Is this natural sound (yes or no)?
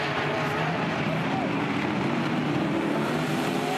no